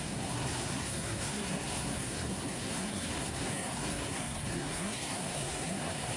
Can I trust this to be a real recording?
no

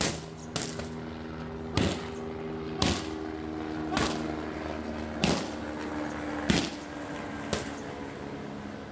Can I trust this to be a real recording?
yes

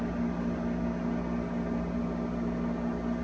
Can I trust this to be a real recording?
yes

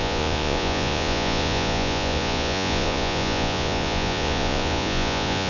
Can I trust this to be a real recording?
no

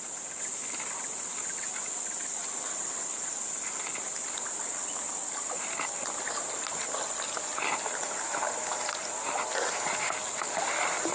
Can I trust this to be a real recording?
yes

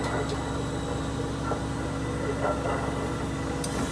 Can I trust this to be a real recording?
yes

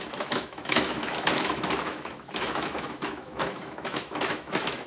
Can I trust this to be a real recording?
no